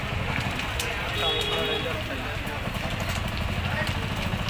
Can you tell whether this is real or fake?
real